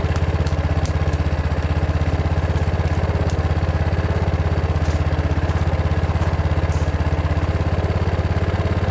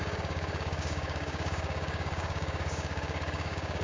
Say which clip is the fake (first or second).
second